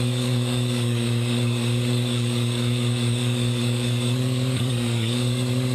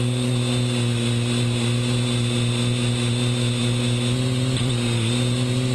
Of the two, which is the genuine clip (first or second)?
second